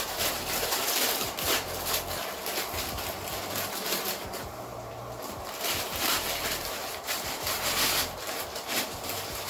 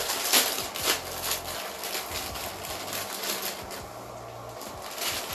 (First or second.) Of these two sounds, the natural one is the second